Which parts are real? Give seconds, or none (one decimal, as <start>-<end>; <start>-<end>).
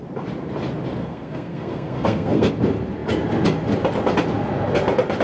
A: 0.0-1.0; 2.5-5.2